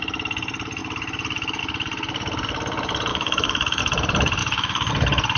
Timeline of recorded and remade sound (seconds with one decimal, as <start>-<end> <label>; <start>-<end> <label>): 0.0-3.1 recorded; 3.1-3.8 remade; 3.8-4.4 recorded; 4.4-4.9 remade; 4.9-5.4 recorded